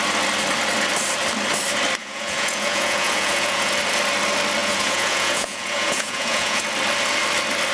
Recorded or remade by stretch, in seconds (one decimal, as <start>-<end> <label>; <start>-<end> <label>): 0.0-2.0 recorded; 2.0-3.7 remade; 3.7-4.6 recorded; 4.6-6.6 remade; 6.6-7.7 recorded